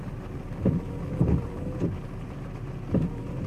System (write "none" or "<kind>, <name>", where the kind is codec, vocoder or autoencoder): none